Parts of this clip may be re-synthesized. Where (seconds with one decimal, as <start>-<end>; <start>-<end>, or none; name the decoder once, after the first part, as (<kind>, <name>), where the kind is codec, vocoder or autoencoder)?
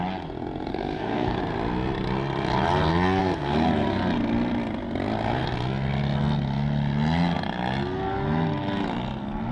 0.7-1.4 (codec, SNAC); 3.2-3.7